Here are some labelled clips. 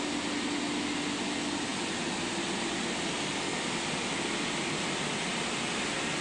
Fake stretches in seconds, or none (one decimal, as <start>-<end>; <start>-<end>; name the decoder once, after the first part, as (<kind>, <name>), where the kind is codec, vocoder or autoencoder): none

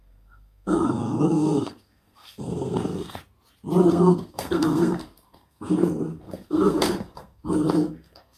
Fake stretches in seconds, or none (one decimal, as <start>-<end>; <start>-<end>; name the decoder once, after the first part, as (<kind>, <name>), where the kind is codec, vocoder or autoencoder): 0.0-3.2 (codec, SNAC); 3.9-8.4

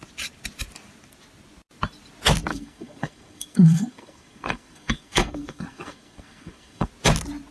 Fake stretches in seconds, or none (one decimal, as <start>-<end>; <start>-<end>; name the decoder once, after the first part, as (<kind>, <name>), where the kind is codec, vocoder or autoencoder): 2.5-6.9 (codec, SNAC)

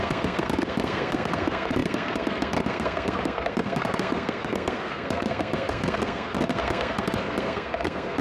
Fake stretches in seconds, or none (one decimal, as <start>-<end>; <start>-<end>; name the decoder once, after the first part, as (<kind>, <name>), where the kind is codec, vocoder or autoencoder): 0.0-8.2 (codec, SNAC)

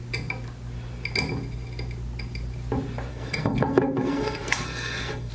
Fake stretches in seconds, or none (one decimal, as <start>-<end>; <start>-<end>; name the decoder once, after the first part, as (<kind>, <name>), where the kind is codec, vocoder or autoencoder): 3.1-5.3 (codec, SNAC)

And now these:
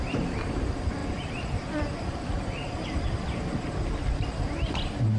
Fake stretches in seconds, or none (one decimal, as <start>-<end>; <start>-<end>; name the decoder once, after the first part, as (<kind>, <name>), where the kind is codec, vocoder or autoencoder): none